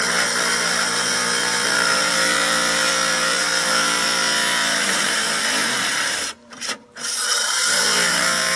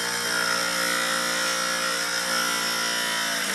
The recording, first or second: second